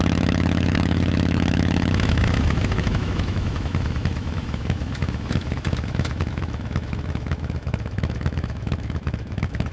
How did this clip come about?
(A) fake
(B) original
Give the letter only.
A